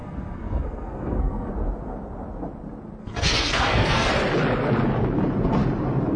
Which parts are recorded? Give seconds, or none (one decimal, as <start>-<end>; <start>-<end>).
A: 1.5-3.0; 4.1-6.2